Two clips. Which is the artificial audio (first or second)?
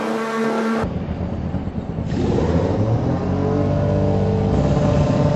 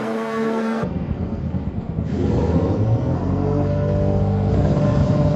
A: second